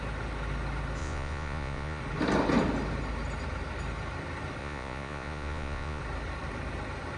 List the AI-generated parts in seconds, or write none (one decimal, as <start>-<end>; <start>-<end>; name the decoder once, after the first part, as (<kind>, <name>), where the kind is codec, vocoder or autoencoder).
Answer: 1.0-2.0 (vocoder, Vocos); 4.6-6.0